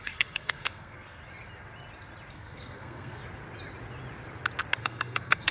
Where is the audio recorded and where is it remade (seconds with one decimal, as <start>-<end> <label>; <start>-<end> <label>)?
0.0-1.2 remade; 1.2-2.3 recorded; 2.3-3.2 remade; 3.2-4.8 recorded; 4.8-5.5 remade